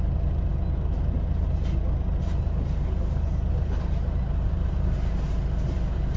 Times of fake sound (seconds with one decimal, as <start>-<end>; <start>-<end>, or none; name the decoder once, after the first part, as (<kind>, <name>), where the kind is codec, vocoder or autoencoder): none